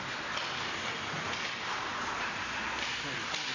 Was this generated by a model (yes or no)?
no